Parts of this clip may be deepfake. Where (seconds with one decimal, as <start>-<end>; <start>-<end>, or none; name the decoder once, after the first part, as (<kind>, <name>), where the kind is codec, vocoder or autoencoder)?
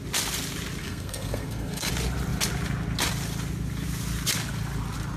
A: 0.8-1.9 (codec, SNAC)